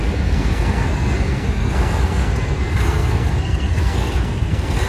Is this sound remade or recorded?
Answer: remade